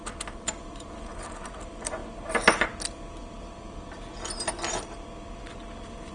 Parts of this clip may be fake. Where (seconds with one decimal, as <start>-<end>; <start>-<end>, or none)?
0.0-2.0